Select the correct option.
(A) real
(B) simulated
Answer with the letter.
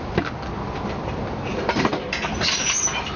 A